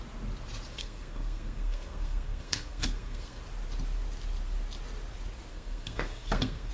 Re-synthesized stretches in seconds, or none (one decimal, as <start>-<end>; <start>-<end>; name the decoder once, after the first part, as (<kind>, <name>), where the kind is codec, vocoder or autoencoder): 0.7-3.4 (codec, SNAC); 5.5-6.7